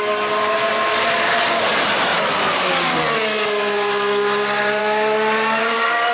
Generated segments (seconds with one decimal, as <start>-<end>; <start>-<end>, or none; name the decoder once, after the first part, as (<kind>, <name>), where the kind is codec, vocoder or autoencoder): none